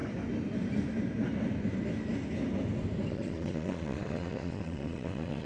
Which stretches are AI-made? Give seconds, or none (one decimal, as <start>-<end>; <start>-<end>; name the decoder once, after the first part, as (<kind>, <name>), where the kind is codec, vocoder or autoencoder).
3.1-5.5 (vocoder, Vocos)